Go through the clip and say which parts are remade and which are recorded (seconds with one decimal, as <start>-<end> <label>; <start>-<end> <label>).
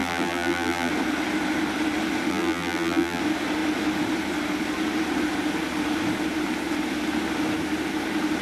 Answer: 0.0-0.9 remade; 0.9-2.3 recorded; 2.3-3.2 remade; 3.2-8.4 recorded